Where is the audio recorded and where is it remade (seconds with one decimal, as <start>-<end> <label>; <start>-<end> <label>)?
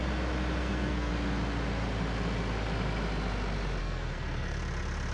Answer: 0.0-0.6 recorded; 0.6-1.1 remade; 1.1-3.8 recorded; 3.8-4.6 remade; 4.6-5.1 recorded